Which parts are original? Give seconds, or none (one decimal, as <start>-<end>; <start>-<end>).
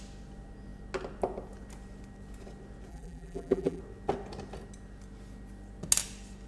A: 0.0-2.9; 3.8-6.5